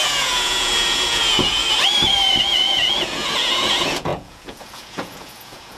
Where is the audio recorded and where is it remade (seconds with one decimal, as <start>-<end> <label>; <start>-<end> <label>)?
0.0-1.6 remade; 1.6-2.4 recorded; 2.4-5.8 remade